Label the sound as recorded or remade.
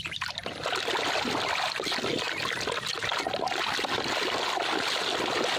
recorded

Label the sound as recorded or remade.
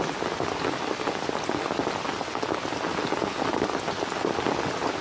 recorded